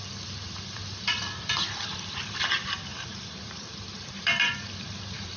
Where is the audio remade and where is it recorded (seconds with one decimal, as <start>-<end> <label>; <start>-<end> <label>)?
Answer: 0.0-5.4 remade